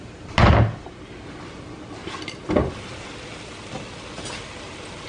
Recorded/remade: recorded